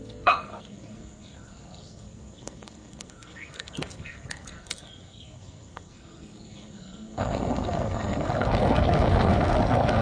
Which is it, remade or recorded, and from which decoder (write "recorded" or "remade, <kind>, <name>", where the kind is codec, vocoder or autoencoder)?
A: remade, codec, SNAC